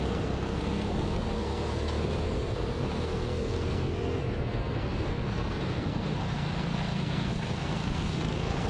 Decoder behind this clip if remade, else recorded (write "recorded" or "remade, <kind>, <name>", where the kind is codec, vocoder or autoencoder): remade, codec, SNAC